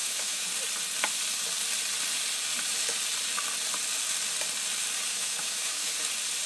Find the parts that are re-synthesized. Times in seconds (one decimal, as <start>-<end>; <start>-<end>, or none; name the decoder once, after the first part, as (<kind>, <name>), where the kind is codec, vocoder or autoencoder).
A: 0.0-0.5 (autoencoder, DAC-VAE); 5.1-5.9